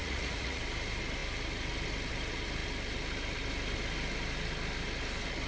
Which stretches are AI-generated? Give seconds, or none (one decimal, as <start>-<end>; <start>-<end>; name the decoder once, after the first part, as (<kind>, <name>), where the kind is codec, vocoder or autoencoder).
0.0-0.6 (vocoder, Vocos)